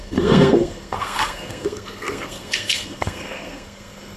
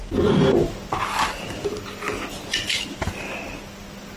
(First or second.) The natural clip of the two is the second